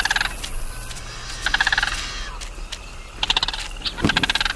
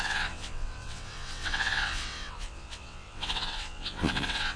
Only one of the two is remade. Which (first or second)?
second